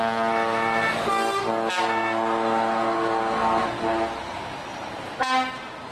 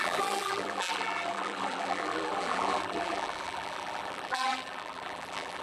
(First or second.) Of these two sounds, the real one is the first